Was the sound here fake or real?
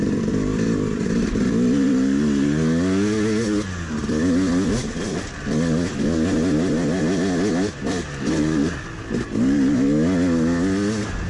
real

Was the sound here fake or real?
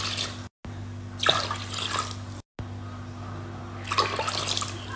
real